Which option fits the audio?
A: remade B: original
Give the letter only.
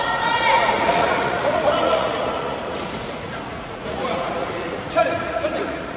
A